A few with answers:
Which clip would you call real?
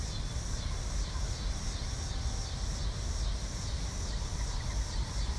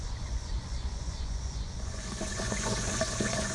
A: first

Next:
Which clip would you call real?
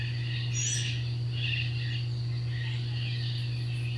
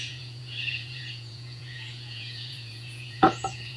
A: first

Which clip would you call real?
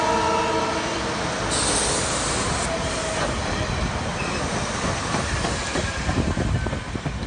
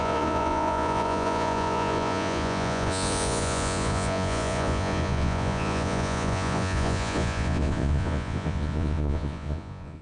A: first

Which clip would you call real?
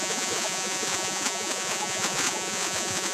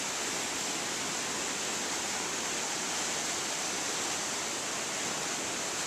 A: second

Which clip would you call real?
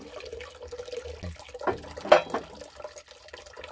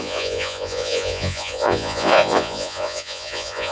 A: first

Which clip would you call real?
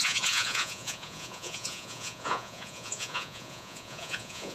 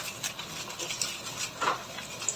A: second